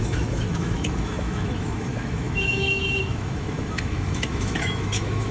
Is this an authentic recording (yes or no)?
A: no